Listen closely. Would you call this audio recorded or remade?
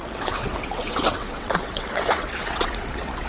remade